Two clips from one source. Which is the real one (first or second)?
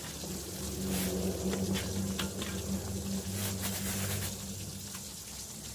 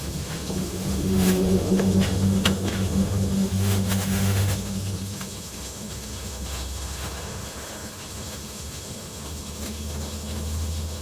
first